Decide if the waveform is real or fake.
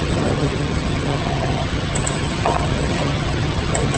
fake